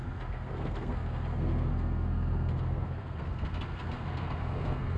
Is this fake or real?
fake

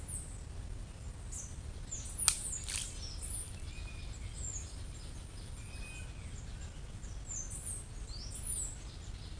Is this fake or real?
real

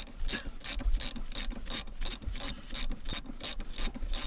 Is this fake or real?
real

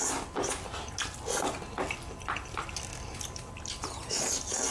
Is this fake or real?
real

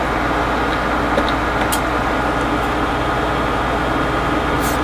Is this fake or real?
real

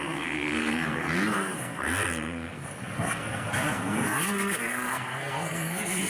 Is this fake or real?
fake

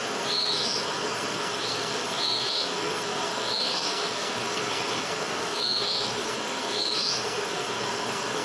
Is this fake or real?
fake